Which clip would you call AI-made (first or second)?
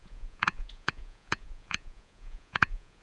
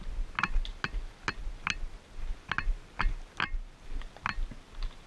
first